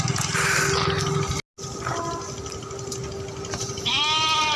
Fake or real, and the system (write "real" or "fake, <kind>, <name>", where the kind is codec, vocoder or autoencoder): real